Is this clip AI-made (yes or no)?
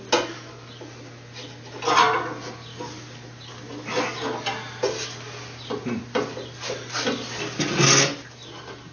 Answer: no